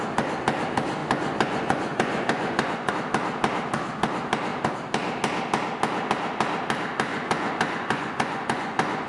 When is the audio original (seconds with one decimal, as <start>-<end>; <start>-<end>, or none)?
0.0-1.0; 2.9-7.1